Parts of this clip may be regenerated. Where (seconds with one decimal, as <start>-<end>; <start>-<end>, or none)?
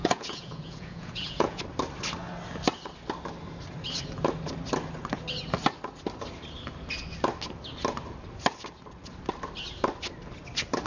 0.0-1.6